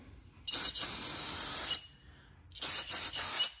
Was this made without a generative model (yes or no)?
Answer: yes